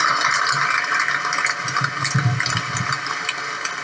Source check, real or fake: real